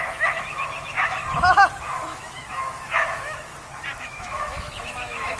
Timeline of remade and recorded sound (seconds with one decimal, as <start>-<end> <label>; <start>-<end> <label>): 0.0-1.2 remade; 1.2-1.8 recorded; 1.8-3.5 remade; 3.5-4.0 recorded; 4.0-5.4 remade